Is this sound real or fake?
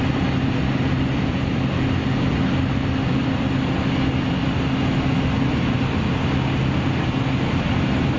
real